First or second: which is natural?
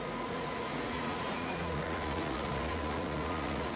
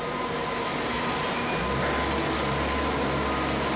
second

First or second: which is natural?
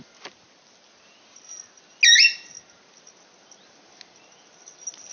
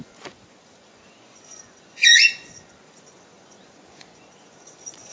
first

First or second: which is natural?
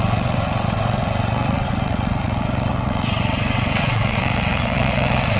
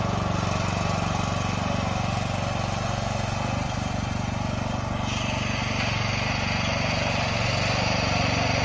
second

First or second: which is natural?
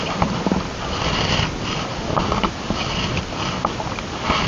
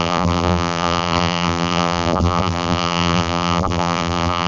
first